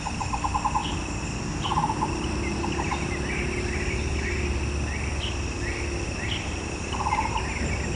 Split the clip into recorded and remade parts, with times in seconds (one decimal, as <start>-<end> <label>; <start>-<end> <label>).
0.0-8.0 recorded